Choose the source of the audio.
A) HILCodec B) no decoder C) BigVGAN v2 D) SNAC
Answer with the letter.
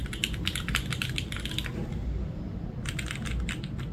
B